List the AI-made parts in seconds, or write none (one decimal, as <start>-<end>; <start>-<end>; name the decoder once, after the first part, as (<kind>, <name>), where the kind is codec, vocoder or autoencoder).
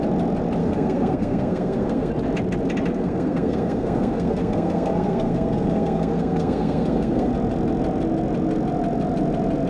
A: 0.6-2.1 (codec, SNAC); 2.9-7.3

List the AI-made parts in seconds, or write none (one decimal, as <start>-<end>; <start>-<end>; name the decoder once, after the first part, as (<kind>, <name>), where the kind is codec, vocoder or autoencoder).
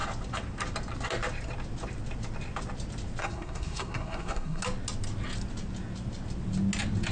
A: 3.2-4.6 (codec, SNAC)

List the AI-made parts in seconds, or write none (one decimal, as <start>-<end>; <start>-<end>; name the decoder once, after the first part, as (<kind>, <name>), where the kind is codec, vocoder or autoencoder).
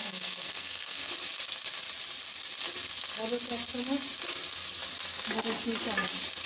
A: 0.0-1.1 (codec, SNAC)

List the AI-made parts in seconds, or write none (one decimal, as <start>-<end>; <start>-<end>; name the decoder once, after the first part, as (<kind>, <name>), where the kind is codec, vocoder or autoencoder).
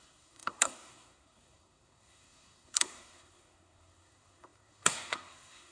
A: 0.0-5.7 (codec, SNAC)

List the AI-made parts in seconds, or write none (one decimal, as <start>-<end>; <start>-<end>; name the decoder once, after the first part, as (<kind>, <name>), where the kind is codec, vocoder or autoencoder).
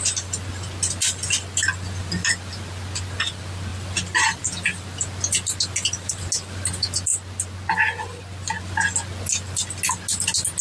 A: none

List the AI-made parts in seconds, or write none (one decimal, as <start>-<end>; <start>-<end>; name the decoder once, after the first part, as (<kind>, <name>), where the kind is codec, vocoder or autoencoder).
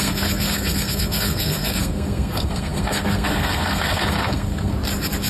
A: 0.0-4.7 (codec, SNAC)